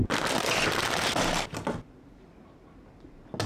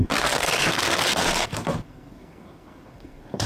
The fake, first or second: second